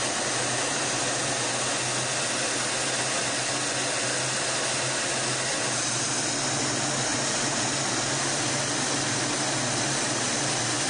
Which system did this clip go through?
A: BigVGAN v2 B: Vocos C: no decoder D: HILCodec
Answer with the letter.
C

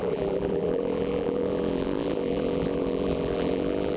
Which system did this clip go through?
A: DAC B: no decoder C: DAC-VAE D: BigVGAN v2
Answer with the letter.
D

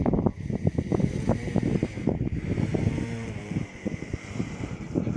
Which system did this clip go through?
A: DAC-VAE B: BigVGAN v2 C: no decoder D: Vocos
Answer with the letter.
B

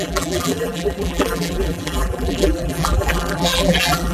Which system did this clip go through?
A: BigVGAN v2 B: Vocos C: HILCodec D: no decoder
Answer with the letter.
A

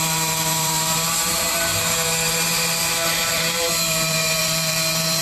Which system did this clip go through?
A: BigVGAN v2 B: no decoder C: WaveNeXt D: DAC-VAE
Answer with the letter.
A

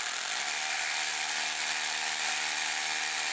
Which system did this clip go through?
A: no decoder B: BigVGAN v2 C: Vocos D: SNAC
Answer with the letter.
A